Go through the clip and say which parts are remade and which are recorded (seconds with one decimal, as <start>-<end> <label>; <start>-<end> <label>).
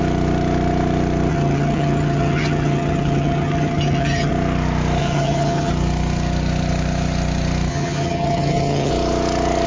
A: 0.0-1.3 recorded; 1.3-4.3 remade; 4.3-5.0 recorded; 5.0-5.7 remade; 5.7-7.7 recorded; 7.7-8.9 remade; 8.9-9.7 recorded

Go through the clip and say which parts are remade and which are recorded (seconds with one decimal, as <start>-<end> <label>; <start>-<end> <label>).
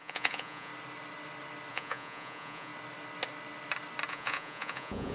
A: 0.0-0.7 remade; 0.7-1.7 recorded; 1.7-2.7 remade; 2.7-4.1 recorded; 4.1-5.1 remade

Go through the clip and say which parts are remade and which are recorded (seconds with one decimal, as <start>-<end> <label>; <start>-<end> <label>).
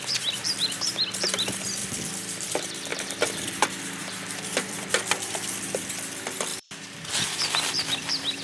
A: 0.0-2.9 remade; 2.9-3.8 recorded; 3.8-8.4 remade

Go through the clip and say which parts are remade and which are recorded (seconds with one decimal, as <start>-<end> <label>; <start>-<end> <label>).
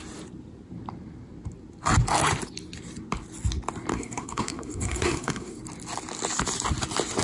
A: 0.0-3.9 recorded; 3.9-5.6 remade; 5.6-7.2 recorded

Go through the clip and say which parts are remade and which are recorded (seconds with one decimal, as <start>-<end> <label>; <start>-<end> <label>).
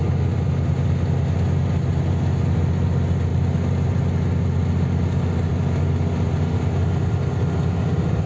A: 0.0-8.3 recorded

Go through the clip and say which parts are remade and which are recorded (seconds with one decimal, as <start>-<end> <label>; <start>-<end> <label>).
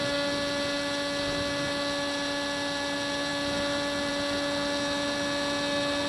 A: 0.0-6.1 recorded